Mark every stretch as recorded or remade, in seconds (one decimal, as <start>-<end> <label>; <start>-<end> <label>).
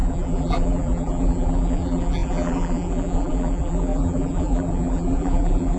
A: 0.0-5.8 remade